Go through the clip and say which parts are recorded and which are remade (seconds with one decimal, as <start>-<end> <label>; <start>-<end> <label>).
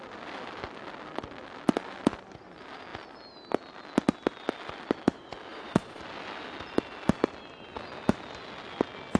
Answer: 0.0-5.5 recorded; 5.5-6.0 remade; 6.0-9.2 recorded